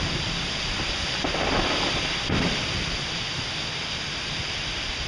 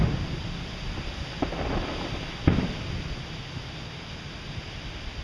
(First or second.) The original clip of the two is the second